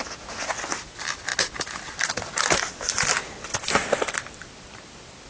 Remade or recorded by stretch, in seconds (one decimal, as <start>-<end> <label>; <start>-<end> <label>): 0.0-5.3 recorded

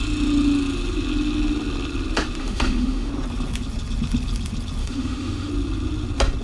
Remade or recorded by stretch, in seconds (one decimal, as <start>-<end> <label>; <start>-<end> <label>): 0.0-2.4 recorded; 2.4-3.1 remade; 3.1-4.8 recorded; 4.8-5.5 remade; 5.5-6.4 recorded

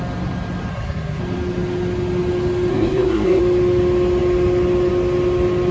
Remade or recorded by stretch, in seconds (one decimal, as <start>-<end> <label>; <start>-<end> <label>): 0.0-0.7 recorded; 0.7-1.2 remade; 1.2-2.7 recorded; 2.7-3.4 remade; 3.4-5.7 recorded

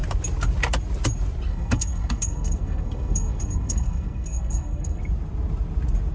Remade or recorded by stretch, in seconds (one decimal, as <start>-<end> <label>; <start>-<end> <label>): 0.0-1.5 recorded; 1.5-5.0 remade; 5.0-6.1 recorded

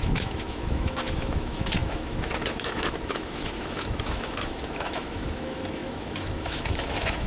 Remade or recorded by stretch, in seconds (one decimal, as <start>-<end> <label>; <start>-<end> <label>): 0.0-7.3 remade